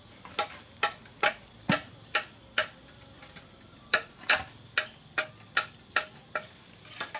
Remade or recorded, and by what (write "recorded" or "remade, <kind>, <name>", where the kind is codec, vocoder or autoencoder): recorded